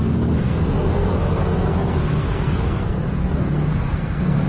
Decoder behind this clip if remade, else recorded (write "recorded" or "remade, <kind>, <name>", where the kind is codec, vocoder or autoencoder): remade, codec, SNAC